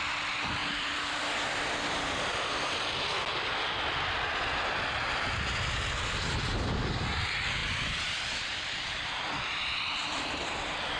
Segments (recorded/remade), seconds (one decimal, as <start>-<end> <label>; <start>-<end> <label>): 0.0-0.6 recorded; 0.6-1.2 remade; 1.2-3.3 recorded; 3.3-3.8 remade; 3.8-7.6 recorded; 7.6-10.6 remade; 10.6-11.0 recorded